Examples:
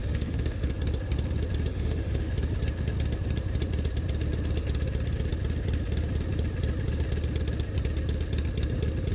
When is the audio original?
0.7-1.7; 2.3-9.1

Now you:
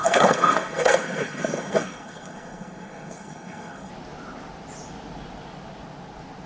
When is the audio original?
3.9-6.5

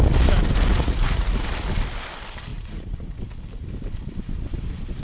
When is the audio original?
0.0-0.7; 1.5-2.5; 3.2-5.0